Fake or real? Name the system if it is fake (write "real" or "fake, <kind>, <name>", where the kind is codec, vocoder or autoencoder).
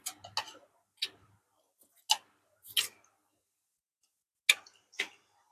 real